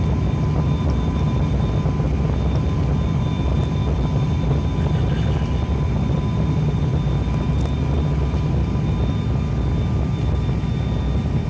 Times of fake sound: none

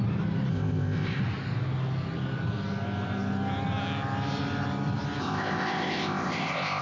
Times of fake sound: 0.5-1.2 (codec, ZipCodec); 5.2-6.8

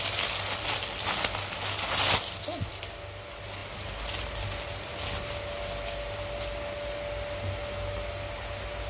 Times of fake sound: none

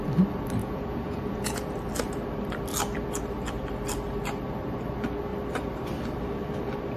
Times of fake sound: 0.6-1.7 (vocoder, Vocos)

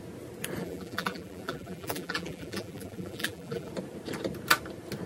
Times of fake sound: 0.6-3.7 (vocoder, BigVGAN v2)

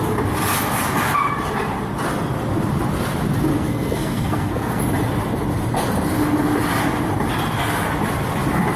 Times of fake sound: 3.5-4.8 (codec, SNAC)